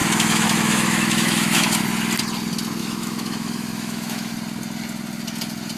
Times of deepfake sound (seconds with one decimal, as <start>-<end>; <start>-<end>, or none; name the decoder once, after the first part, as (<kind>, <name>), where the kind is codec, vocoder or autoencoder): 0.0-1.8 (autoencoder, DAC-VAE); 2.8-4.3